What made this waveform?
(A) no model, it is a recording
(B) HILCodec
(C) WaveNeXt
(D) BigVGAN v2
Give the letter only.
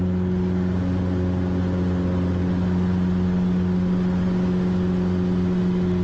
A